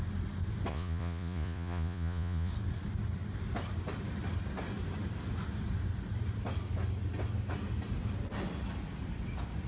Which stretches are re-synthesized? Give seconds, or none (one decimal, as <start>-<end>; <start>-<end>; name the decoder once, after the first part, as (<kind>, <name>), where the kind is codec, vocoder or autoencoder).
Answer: 0.7-2.5 (vocoder, Vocos)